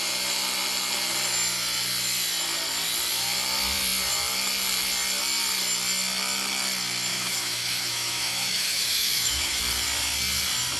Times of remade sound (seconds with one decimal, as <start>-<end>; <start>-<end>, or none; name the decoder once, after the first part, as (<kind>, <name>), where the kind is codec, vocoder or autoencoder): 7.1-9.6 (autoencoder, DAC-VAE)